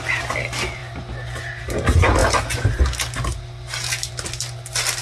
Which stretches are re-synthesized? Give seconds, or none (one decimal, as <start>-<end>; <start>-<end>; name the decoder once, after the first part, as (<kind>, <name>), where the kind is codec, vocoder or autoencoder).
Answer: none